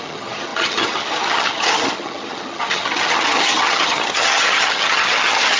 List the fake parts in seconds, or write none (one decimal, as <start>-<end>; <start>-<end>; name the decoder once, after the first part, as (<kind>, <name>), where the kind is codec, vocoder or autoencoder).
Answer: 0.0-5.6 (vocoder, HiFi-GAN)